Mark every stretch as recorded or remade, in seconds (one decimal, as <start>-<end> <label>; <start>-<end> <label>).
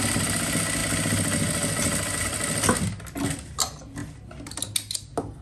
0.0-5.4 recorded